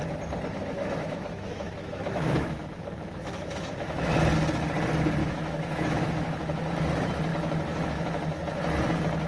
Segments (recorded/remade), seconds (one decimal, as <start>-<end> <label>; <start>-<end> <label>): 0.0-0.6 recorded; 0.6-4.1 remade; 4.1-5.2 recorded; 5.2-6.7 remade; 6.7-7.3 recorded; 7.3-8.4 remade; 8.4-9.3 recorded